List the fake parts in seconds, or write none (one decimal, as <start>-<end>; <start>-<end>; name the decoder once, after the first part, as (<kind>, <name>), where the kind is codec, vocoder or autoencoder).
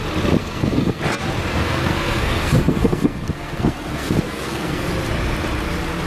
0.4-1.0 (codec, SNAC); 1.5-4.8